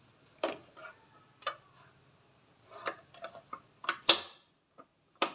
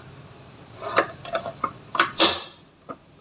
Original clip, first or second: first